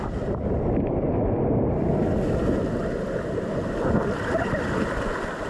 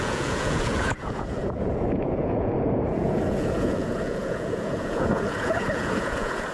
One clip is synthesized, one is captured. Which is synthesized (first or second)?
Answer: second